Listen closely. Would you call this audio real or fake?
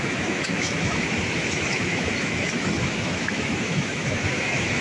fake